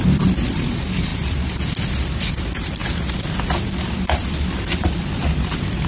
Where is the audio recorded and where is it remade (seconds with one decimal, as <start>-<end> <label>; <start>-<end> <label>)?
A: 0.0-1.1 remade; 1.1-2.3 recorded; 2.3-2.8 remade; 2.8-5.1 recorded; 5.1-5.9 remade